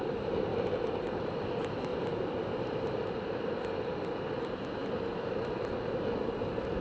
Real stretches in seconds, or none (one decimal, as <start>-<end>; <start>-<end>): 0.0-1.9; 3.6-6.8

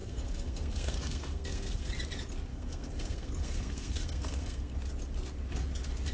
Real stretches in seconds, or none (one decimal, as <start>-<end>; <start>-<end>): 1.9-2.5; 4.7-6.1